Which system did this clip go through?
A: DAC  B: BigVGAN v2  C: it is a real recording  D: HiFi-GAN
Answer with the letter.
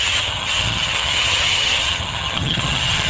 D